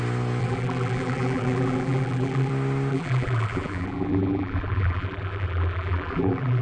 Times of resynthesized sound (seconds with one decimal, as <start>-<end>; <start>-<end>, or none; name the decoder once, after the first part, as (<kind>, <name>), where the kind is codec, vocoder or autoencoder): 0.4-2.5 (vocoder, BigVGAN v2); 2.9-6.6